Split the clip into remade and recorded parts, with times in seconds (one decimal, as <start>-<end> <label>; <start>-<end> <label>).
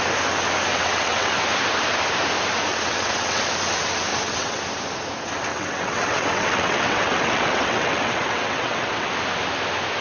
0.0-0.7 recorded; 0.7-1.3 remade; 1.3-2.7 recorded; 2.7-3.4 remade; 3.4-4.1 recorded; 4.1-4.6 remade; 4.6-5.5 recorded; 5.5-9.1 remade; 9.1-10.0 recorded